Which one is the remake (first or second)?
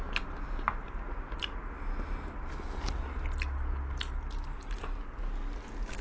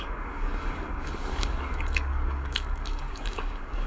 second